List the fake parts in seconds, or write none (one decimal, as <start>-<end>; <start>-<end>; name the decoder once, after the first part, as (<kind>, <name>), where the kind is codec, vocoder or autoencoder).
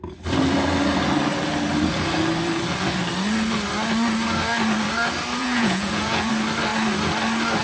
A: 5.4-6.3 (vocoder, Vocos)